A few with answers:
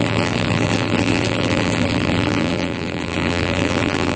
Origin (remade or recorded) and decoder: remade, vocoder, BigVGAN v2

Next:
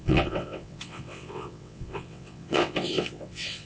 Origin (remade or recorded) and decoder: remade, vocoder, WaveNeXt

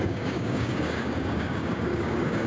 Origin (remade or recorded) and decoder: remade, codec, DAC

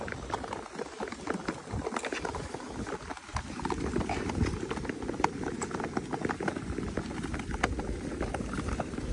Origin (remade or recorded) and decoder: recorded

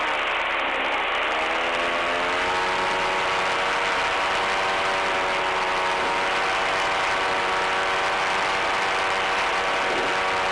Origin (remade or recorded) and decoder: recorded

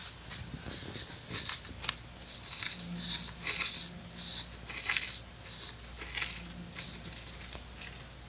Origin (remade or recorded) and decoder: recorded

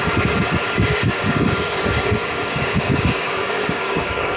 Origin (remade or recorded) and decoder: remade, codec, DAC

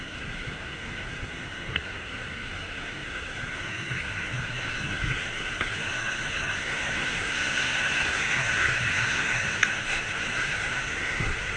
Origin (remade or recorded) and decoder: remade, codec, SNAC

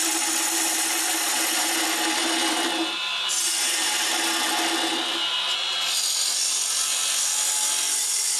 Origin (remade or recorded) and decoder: recorded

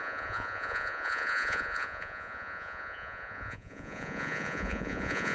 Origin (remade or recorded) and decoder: remade, vocoder, Vocos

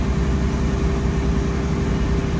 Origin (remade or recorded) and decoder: recorded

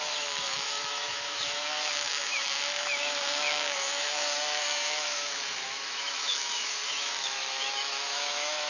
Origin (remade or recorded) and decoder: remade, autoencoder, DAC-VAE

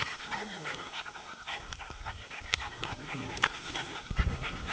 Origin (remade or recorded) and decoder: remade, codec, SNAC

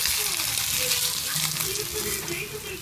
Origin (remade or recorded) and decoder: recorded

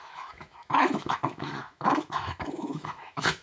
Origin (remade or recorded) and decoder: remade, autoencoder, DAC-VAE